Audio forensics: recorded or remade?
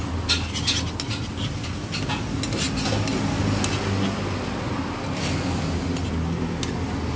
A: recorded